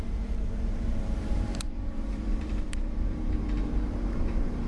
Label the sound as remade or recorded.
remade